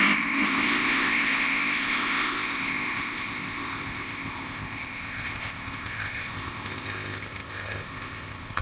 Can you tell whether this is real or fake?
fake